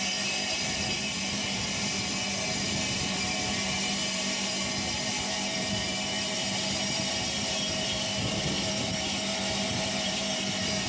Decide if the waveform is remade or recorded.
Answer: remade